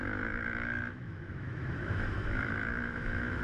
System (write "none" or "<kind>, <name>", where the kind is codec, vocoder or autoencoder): autoencoder, DAC-VAE